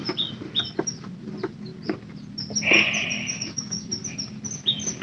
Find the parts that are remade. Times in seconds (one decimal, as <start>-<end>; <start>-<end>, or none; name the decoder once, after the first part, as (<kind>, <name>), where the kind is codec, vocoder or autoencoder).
3.3-3.9 (autoencoder, DAC-VAE)